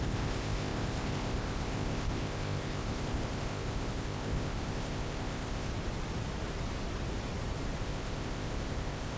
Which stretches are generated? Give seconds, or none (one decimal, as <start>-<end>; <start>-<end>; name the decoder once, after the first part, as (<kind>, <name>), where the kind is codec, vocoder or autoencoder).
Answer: 0.0-5.7 (codec, ZipCodec); 7.8-9.2